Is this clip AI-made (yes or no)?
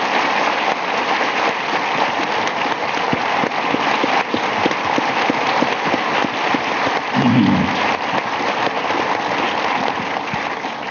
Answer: no